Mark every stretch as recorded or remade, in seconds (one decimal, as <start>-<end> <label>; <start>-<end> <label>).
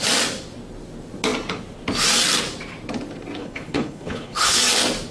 0.0-3.4 recorded; 3.4-4.6 remade; 4.6-5.1 recorded